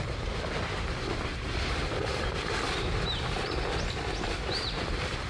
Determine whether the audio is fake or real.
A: real